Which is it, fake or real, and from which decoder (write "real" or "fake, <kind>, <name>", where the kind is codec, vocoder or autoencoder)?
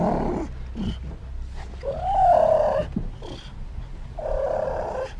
fake, vocoder, BigVGAN v2